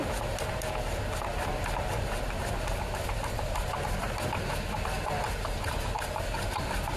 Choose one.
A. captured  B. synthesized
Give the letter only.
A